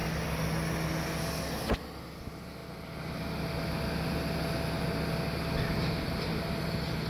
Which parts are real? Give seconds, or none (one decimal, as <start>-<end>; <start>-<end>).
0.0-7.1